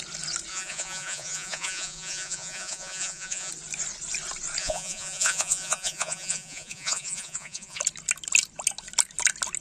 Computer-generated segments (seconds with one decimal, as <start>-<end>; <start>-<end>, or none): 0.5-3.5; 4.6-7.8